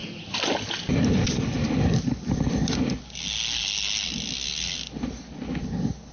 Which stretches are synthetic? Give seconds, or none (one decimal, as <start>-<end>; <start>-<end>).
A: none